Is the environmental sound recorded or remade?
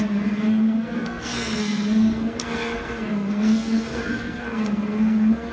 remade